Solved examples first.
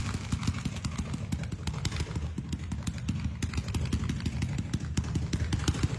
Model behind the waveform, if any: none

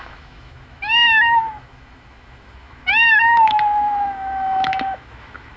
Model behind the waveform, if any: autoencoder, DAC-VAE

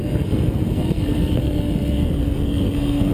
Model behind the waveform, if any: codec, SNAC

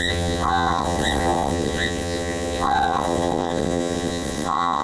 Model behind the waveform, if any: vocoder, WaveNeXt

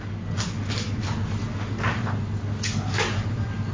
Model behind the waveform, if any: none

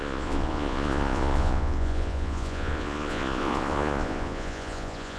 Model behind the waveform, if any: vocoder, Vocos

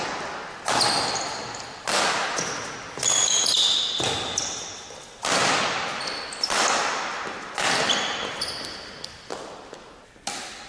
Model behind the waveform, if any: none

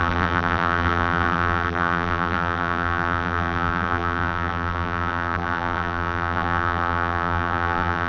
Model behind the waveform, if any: vocoder, BigVGAN v2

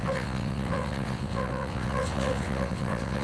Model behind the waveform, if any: vocoder, WaveNeXt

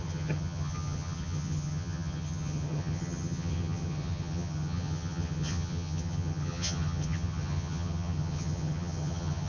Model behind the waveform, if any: vocoder, HiFi-GAN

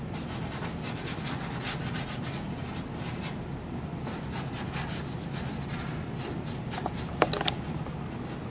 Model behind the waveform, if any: none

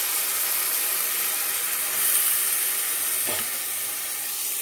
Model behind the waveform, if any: none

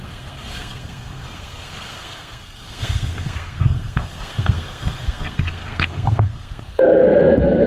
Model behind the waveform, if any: codec, SNAC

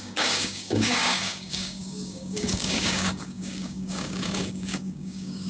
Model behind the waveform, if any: codec, DAC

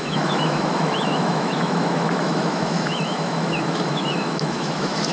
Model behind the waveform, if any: autoencoder, DAC-VAE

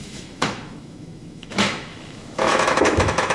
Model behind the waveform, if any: autoencoder, DAC-VAE